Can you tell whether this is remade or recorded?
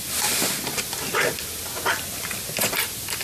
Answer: recorded